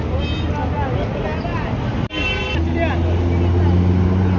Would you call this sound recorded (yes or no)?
yes